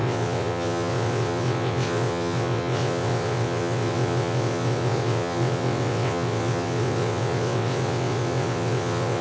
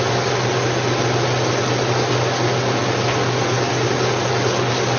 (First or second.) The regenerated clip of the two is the first